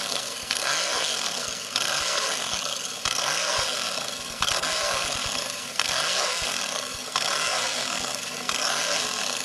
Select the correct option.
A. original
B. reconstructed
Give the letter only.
B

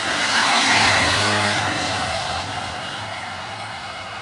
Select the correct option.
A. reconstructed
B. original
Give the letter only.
A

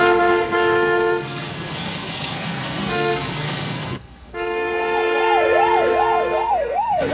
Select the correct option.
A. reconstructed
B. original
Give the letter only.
A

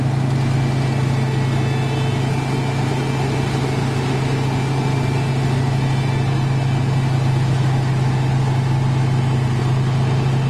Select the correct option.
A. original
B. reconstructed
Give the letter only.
A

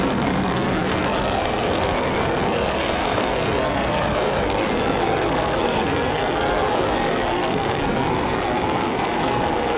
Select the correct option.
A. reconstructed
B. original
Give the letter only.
A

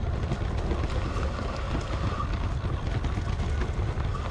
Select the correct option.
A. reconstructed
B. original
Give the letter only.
B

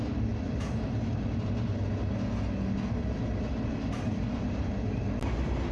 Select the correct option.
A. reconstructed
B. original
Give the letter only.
B